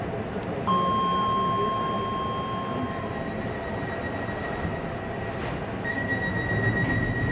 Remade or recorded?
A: recorded